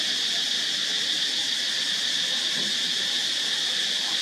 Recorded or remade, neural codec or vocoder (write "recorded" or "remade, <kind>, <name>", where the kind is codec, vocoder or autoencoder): recorded